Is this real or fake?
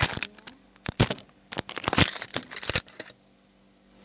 real